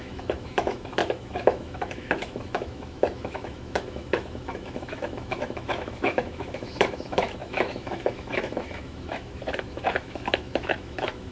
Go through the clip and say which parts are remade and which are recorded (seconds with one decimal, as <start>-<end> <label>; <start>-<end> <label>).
0.0-11.3 remade